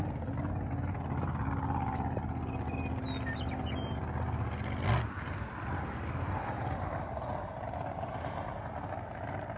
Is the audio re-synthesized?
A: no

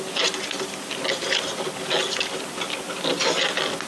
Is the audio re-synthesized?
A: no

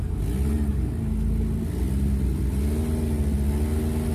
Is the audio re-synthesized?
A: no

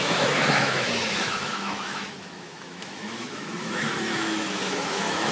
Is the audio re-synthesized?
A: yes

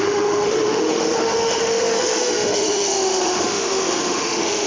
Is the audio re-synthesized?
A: yes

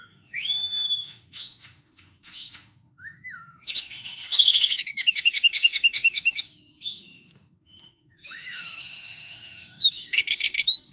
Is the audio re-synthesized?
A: yes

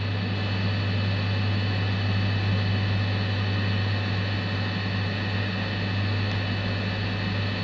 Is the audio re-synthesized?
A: no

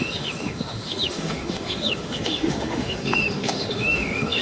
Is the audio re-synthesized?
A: yes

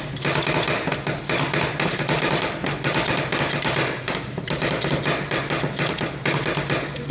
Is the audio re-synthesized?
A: no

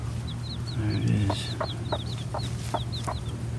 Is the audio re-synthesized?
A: no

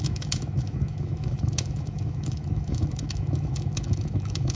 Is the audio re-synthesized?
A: yes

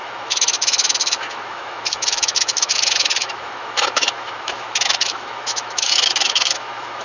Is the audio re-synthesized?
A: yes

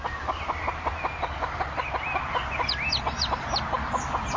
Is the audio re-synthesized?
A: no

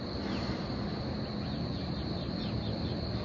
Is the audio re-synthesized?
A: no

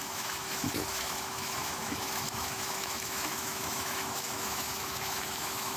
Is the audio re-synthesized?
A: yes